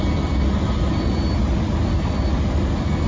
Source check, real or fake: real